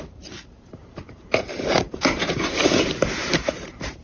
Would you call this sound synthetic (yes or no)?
yes